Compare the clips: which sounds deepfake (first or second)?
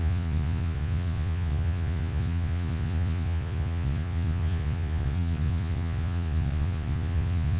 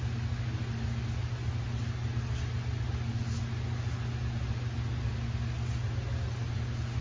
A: first